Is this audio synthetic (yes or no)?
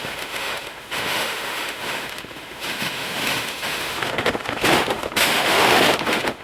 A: yes